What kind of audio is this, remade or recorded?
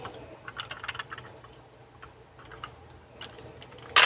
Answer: recorded